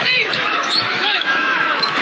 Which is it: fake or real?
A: fake